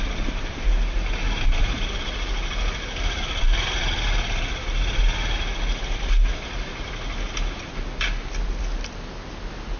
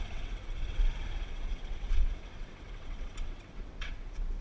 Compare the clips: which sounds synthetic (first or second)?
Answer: second